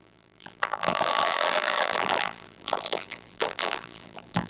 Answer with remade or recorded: remade